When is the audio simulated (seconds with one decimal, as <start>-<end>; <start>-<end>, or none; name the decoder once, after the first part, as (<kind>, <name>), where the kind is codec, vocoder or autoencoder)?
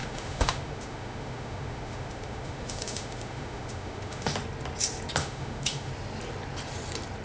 0.0-4.3 (autoencoder, DAC-VAE); 5.2-5.9